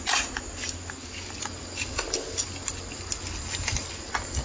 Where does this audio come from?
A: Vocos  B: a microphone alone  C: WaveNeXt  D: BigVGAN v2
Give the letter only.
B